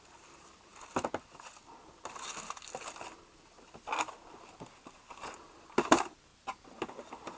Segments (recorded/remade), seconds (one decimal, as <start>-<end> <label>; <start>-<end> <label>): 0.0-7.4 recorded